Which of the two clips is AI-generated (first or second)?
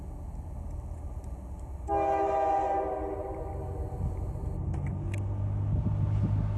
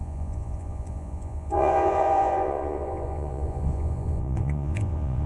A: second